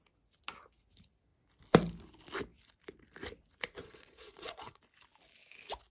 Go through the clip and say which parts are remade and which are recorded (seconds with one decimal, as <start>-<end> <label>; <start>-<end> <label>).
0.0-3.8 recorded; 3.8-4.8 remade; 4.8-5.9 recorded